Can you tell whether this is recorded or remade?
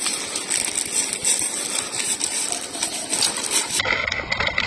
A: recorded